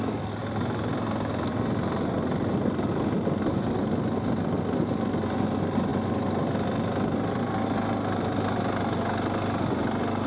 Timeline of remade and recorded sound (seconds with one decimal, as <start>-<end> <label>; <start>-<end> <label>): 0.0-10.3 recorded